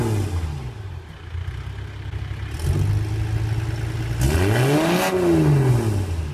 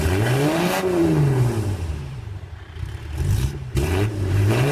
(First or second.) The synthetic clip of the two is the second